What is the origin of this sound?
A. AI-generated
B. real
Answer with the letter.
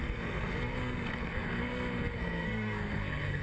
A